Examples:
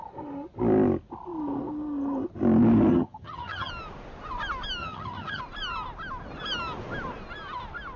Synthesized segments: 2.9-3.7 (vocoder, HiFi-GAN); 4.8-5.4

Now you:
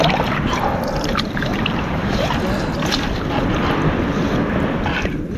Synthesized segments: 1.5-2.0 (vocoder, BigVGAN v2)

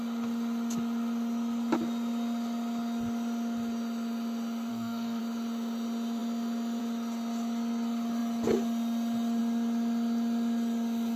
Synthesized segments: 4.7-5.2 (codec, SNAC)

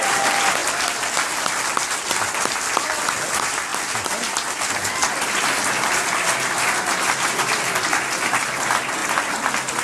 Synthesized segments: none

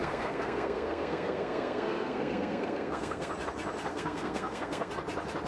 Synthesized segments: 0.0-3.3 (codec, SNAC); 3.9-4.9